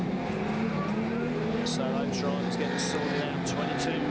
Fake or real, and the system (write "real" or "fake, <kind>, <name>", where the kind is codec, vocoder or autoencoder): real